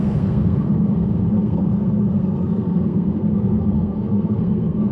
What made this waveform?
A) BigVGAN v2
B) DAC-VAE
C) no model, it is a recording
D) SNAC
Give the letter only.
D